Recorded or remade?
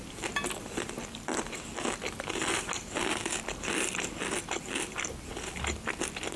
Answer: recorded